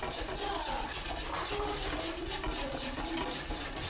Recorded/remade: recorded